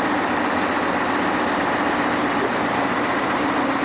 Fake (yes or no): no